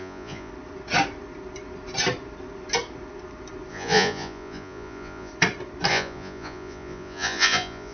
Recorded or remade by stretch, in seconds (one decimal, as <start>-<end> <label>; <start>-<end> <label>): 0.0-0.5 remade; 0.5-3.7 recorded; 3.7-5.3 remade; 5.3-5.9 recorded; 5.9-7.9 remade